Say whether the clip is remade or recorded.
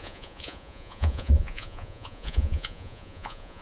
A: remade